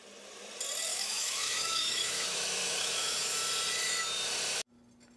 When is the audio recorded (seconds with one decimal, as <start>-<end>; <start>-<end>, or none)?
0.0-0.9; 3.3-5.2